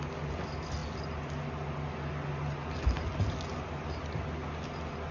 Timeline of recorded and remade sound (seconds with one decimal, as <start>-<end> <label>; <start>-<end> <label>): 0.0-5.1 recorded